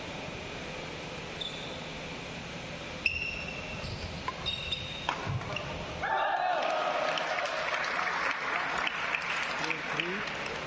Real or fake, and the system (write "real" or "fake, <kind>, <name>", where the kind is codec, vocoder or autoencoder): real